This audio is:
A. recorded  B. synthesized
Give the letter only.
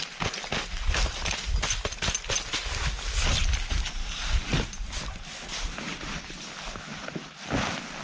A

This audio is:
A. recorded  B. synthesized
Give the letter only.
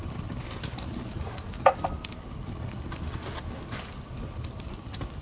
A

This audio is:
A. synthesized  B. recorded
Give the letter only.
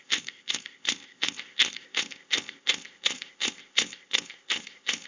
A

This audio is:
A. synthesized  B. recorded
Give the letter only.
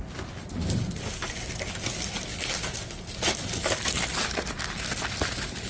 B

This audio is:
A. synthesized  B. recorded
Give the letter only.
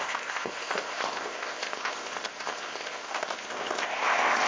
A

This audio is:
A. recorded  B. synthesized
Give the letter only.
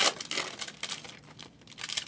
A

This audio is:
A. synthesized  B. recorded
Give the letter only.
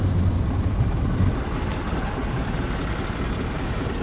B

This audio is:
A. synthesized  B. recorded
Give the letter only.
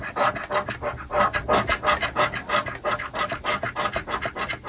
B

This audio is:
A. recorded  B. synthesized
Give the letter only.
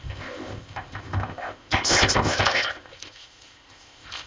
B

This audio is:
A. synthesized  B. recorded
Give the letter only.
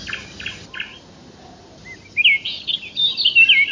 B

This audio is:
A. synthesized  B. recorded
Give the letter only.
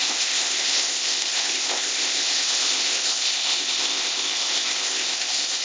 A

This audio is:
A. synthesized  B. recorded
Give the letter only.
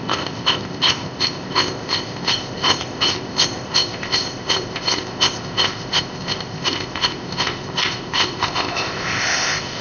A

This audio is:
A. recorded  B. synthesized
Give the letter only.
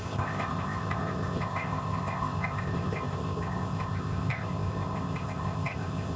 B